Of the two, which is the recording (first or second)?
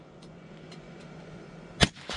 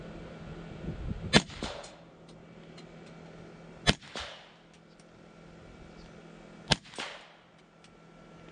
second